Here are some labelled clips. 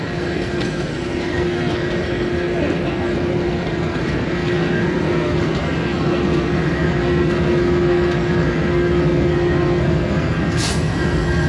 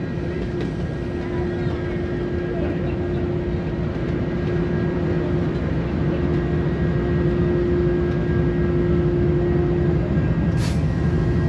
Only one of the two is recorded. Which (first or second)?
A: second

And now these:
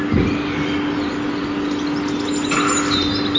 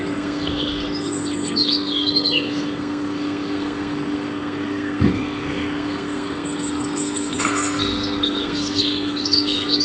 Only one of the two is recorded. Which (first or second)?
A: first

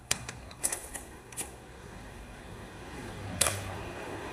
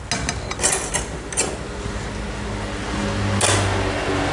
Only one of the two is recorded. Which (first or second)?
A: second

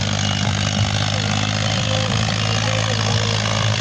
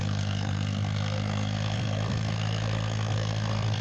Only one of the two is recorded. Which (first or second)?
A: first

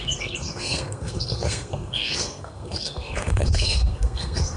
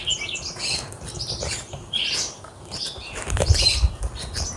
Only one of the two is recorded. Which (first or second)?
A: second